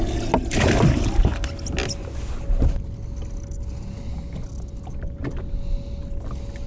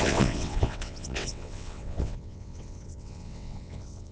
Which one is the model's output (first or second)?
second